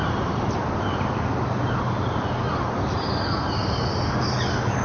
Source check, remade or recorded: recorded